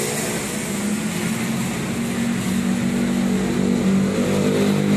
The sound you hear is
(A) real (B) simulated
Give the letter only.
A